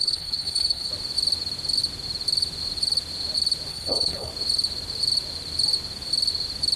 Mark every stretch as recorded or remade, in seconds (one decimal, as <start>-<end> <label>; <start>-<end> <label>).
0.0-0.9 remade; 0.9-3.7 recorded; 3.7-4.3 remade; 4.3-6.8 recorded